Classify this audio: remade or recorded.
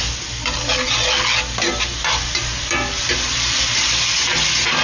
recorded